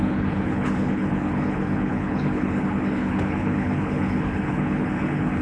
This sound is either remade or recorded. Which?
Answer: remade